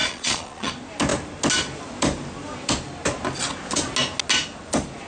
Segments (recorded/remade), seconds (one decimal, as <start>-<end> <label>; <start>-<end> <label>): 0.0-0.7 remade; 0.7-5.1 recorded